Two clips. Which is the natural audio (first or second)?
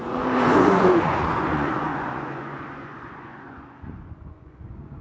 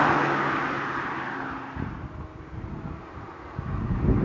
second